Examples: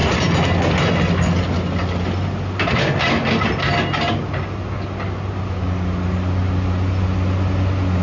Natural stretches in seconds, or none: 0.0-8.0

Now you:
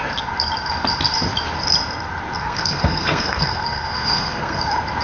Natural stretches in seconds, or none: 0.0-2.4; 4.6-5.0